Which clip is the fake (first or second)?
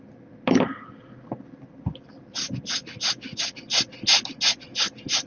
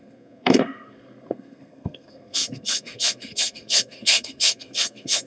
second